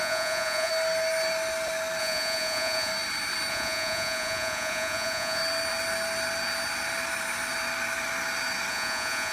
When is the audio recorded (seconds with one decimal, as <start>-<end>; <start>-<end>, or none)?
0.7-2.0; 2.9-3.5; 5.4-8.7